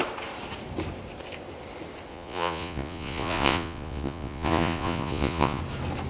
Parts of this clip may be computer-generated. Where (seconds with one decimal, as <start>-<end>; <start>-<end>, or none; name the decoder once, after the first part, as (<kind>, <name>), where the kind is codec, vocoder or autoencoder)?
2.1-5.6 (vocoder, Vocos)